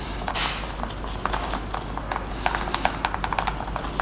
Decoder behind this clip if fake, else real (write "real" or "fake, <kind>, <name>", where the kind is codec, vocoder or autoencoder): real